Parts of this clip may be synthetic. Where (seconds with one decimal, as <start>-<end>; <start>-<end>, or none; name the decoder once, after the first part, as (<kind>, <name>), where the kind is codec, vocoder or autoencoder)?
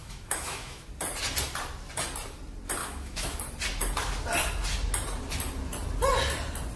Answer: 0.0-0.9 (autoencoder, DAC-VAE); 2.8-3.4